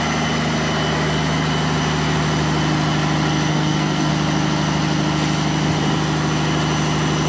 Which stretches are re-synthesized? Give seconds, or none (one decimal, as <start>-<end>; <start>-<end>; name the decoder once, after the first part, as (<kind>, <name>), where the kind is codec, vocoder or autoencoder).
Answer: 3.5-4.1 (codec, SNAC)